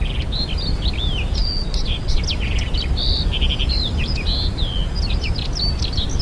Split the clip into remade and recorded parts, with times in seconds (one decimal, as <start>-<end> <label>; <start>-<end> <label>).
0.0-1.4 recorded; 1.4-2.2 remade; 2.2-6.2 recorded